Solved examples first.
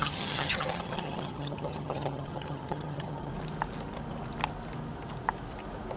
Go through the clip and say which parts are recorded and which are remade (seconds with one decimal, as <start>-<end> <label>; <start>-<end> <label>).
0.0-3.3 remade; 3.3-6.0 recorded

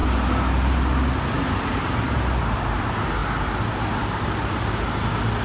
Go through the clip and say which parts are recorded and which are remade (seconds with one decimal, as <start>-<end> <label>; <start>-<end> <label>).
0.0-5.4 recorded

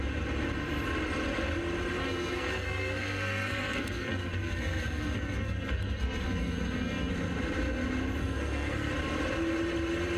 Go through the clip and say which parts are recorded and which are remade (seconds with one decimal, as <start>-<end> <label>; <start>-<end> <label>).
0.0-2.0 recorded; 2.0-7.1 remade; 7.1-8.2 recorded; 8.2-8.9 remade; 8.9-10.2 recorded

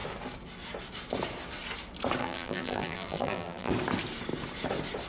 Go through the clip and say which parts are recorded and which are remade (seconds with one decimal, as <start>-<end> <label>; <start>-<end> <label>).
0.0-2.2 recorded; 2.2-3.7 remade; 3.7-5.1 recorded

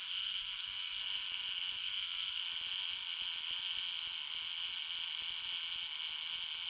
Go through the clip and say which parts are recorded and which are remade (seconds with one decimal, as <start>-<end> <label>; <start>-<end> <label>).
0.0-1.0 remade; 1.0-1.8 recorded; 1.8-2.4 remade; 2.4-6.7 recorded